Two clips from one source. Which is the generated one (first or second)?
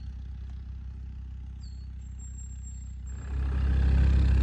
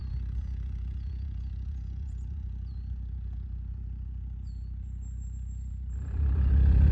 second